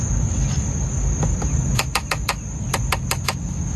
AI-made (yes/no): no